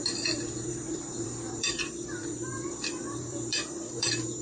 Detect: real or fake fake